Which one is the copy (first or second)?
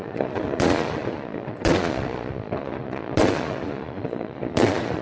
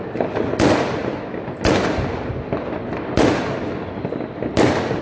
first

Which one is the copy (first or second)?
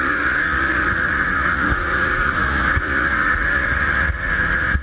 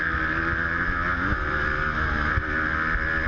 first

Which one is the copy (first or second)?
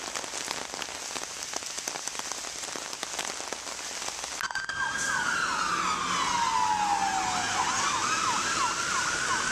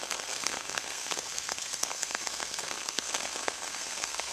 second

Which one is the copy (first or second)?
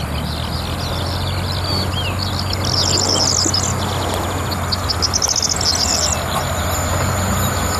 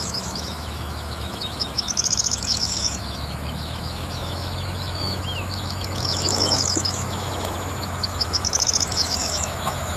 second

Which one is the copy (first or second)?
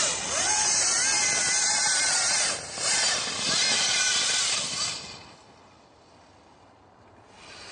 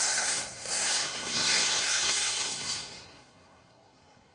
second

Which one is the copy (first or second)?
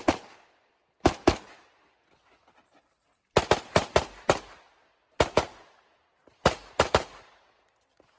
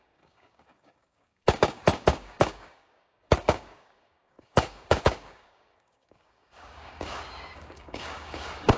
second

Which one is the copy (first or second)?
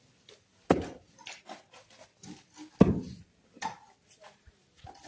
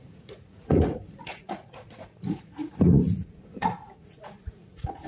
second